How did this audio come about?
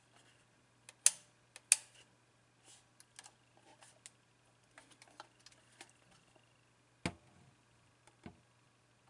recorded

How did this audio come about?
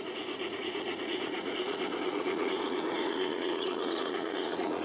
remade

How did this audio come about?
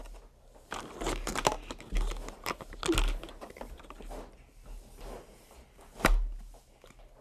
recorded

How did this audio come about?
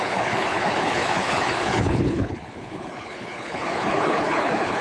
remade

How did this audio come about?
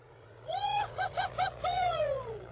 remade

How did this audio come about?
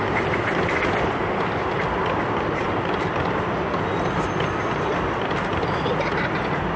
recorded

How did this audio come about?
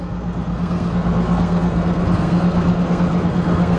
remade